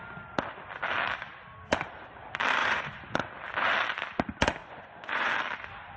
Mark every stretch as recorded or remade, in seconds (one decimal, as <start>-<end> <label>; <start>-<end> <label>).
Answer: 0.0-2.6 recorded; 2.6-3.2 remade; 3.2-4.6 recorded; 4.6-5.3 remade; 5.3-6.0 recorded